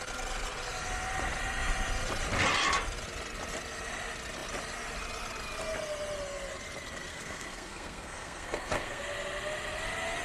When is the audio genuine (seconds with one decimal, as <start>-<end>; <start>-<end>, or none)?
0.0-7.1; 9.0-10.2